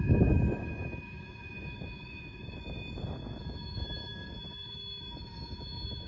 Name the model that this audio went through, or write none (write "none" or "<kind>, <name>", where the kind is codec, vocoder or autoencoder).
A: autoencoder, DAC-VAE